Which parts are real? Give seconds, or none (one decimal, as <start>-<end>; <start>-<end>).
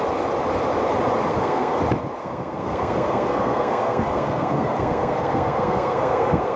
0.0-1.3; 1.8-2.2